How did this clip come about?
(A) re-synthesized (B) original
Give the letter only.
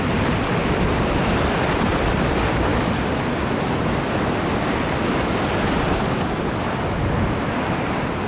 B